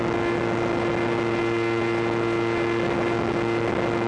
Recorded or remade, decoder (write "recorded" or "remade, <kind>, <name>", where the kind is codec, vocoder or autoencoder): recorded